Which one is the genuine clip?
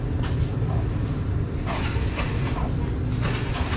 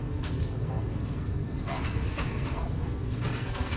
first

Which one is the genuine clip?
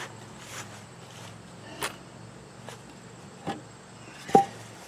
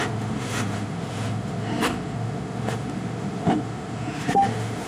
first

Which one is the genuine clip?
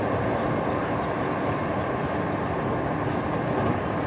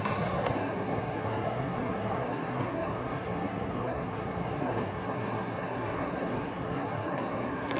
first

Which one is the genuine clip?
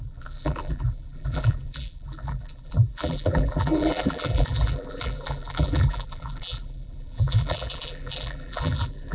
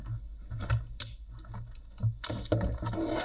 second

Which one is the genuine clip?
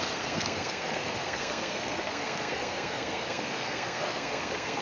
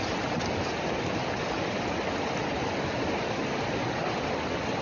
second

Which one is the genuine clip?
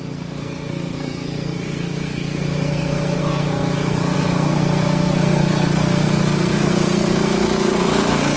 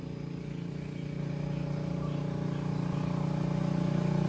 second